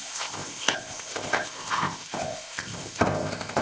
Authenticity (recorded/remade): remade